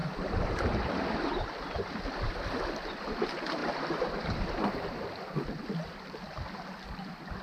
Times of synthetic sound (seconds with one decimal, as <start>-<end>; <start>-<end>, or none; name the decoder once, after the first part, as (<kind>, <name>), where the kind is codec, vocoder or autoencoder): 0.0-3.0 (vocoder, BigVGAN v2); 3.6-4.6